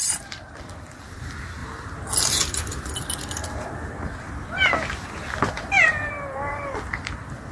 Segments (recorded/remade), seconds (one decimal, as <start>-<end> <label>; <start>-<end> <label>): 0.0-1.6 remade; 1.6-5.5 recorded; 5.5-7.5 remade